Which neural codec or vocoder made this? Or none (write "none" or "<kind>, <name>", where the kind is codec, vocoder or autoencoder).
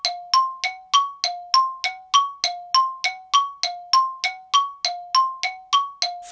none